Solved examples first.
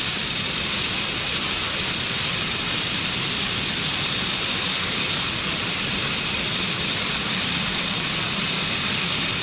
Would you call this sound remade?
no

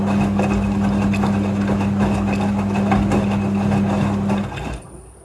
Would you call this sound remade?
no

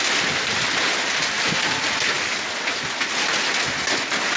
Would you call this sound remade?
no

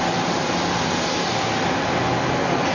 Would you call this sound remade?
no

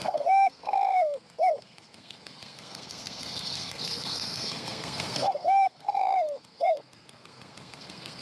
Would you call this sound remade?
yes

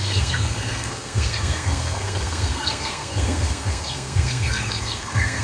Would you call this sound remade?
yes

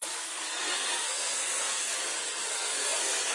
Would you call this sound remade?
yes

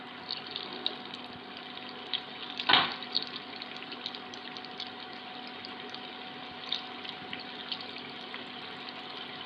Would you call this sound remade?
no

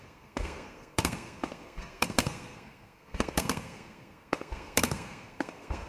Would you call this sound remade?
yes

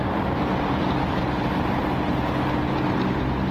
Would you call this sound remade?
no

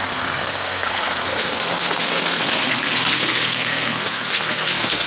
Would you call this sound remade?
yes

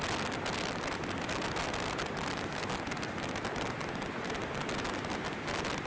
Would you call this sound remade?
no